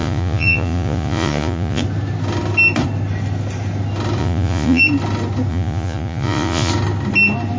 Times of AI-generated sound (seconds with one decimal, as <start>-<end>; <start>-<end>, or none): 0.0-1.8; 4.2-4.8; 5.5-6.7